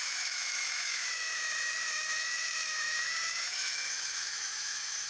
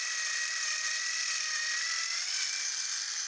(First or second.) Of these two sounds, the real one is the second